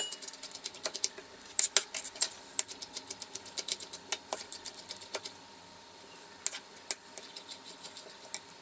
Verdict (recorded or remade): recorded